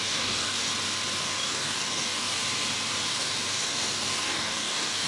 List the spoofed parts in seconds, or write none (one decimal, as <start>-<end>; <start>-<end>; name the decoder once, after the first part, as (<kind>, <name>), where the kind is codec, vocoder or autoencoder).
0.0-0.7 (codec, DAC); 1.2-2.4; 3.1-5.1